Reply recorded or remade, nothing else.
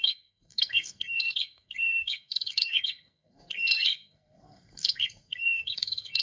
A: remade